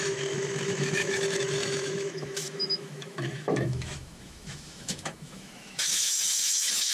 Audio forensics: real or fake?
fake